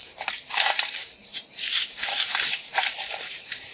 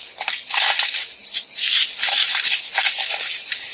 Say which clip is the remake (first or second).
first